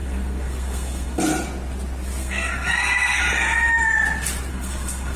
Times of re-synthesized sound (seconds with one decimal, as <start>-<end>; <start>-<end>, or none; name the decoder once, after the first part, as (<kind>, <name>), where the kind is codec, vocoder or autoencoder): 0.0-1.2 (codec, SNAC); 2.2-3.2; 4.5-5.2